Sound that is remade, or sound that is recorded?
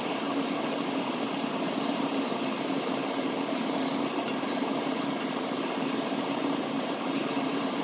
remade